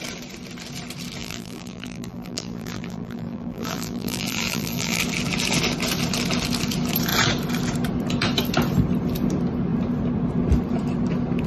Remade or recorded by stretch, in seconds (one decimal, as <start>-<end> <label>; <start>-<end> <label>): 0.0-1.2 recorded; 1.2-5.0 remade; 5.0-11.5 recorded